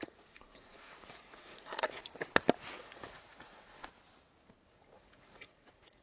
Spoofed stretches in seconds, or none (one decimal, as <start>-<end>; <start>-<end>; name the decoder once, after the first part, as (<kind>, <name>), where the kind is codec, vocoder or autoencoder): 0.0-2.0 (vocoder, Vocos); 2.8-3.8; 4.7-6.0